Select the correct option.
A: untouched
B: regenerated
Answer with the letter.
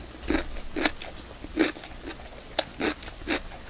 A